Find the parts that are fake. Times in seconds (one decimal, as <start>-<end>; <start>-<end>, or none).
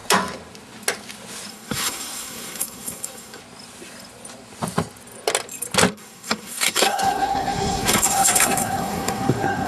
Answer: 1.5-3.4; 5.9-9.7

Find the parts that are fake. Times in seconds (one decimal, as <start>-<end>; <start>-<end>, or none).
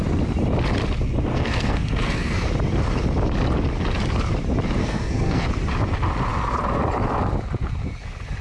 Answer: 1.3-2.5; 4.8-5.5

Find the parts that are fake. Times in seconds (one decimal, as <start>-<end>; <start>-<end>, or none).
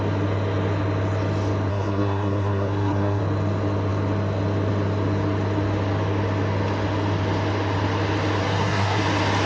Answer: 1.7-3.2; 8.4-9.0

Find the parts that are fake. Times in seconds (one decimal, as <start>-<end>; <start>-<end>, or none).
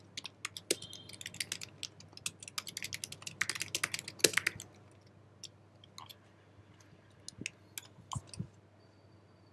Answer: none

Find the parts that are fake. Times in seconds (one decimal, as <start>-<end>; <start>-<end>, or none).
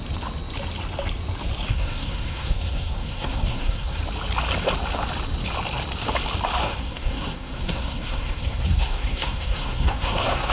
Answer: 1.7-4.0; 6.6-10.5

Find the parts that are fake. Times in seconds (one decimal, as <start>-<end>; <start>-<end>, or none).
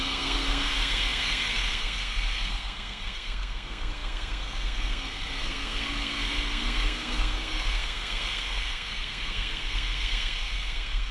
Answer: 0.0-11.1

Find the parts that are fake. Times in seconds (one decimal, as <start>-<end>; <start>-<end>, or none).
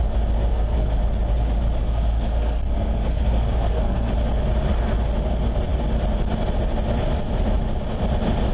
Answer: 0.5-1.0; 1.8-4.1